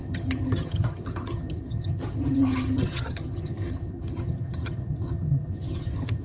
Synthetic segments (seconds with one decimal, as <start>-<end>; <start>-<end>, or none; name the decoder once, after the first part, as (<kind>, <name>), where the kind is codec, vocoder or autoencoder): 0.0-6.2 (vocoder, HiFi-GAN)